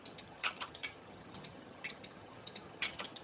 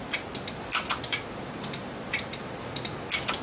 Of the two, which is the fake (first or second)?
first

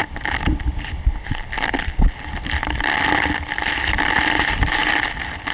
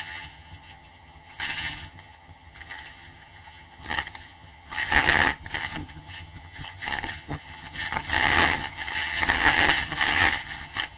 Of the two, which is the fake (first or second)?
second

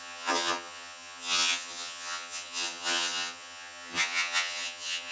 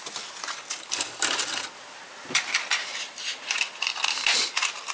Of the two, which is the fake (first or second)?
first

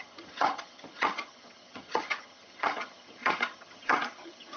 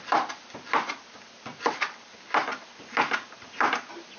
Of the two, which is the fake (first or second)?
first